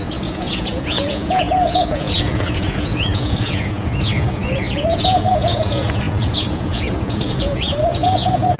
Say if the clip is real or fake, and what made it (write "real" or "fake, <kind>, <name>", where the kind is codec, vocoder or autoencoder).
fake, vocoder, Vocos